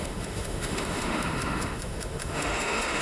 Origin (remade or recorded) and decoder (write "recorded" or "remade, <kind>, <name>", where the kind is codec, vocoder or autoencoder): remade, autoencoder, DAC-VAE